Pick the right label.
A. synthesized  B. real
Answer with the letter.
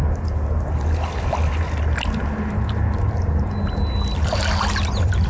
B